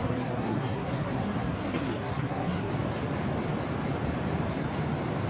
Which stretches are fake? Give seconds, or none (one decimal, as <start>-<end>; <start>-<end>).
0.0-2.7